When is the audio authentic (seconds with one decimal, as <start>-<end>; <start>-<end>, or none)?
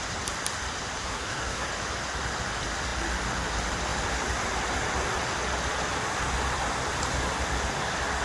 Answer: 0.0-1.0; 1.7-8.2